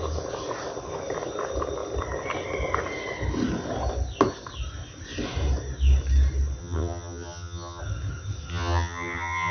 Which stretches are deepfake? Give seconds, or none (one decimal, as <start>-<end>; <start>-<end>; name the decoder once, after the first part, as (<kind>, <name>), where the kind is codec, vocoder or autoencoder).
6.6-7.8 (vocoder, HiFi-GAN); 8.5-9.5